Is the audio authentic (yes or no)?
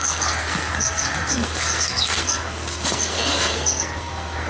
no